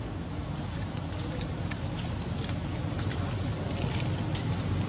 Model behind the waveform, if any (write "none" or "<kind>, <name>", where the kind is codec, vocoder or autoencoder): none